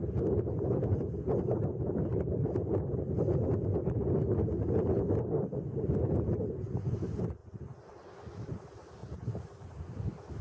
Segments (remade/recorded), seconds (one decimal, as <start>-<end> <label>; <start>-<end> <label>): 0.0-9.0 recorded; 9.0-9.8 remade; 9.8-10.4 recorded

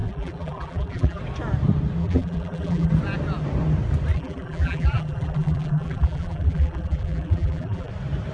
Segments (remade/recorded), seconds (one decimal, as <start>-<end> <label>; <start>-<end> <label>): 0.0-1.2 remade; 1.2-2.0 recorded; 2.0-2.9 remade; 2.9-4.1 recorded; 4.1-7.9 remade; 7.9-8.3 recorded

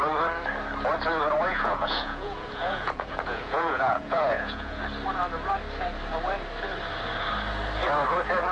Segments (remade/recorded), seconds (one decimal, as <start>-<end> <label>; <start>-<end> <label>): 0.0-1.5 recorded; 1.5-4.8 remade; 4.8-8.5 recorded

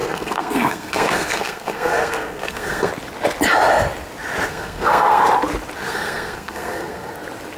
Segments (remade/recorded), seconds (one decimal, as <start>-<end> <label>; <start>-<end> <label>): 0.0-2.9 remade; 2.9-4.5 recorded; 4.5-5.2 remade; 5.2-5.8 recorded; 5.8-7.1 remade; 7.1-7.6 recorded

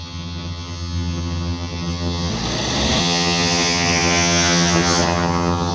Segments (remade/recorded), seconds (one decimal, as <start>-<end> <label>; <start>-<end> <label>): 0.0-2.3 remade; 2.3-3.0 recorded; 3.0-5.7 remade

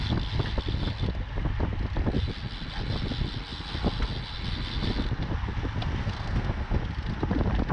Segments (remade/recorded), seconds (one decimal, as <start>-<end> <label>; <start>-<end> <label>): 0.0-6.0 recorded; 6.0-6.8 remade; 6.8-7.7 recorded

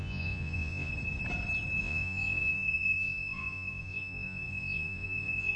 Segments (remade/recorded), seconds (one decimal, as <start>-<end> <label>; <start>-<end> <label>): 0.0-0.9 remade; 0.9-1.8 recorded; 1.8-5.6 remade

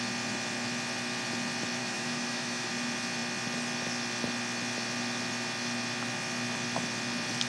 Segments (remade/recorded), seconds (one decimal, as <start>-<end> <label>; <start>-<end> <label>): 0.0-1.8 recorded; 1.8-2.7 remade; 2.7-7.5 recorded